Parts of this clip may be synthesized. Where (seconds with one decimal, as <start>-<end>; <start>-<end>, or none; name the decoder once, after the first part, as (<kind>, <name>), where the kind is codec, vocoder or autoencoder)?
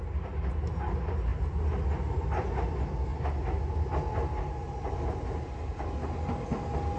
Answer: none